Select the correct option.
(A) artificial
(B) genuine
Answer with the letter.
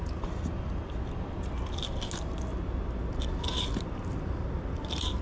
B